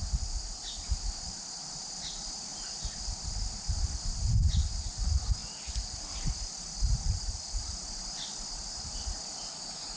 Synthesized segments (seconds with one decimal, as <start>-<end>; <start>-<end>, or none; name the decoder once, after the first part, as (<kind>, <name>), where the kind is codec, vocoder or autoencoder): none